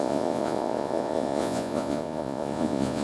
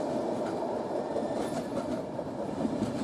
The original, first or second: second